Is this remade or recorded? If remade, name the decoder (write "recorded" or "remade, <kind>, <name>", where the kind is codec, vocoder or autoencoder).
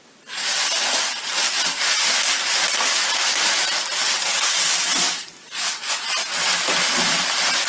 recorded